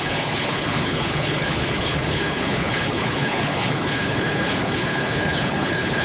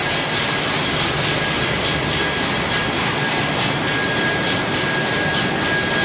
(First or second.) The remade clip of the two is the first